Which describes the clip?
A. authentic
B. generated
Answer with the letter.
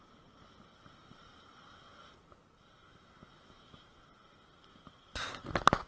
A